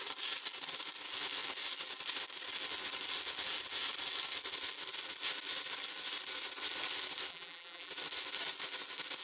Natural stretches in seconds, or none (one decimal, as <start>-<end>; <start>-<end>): 0.0-7.3; 7.9-9.2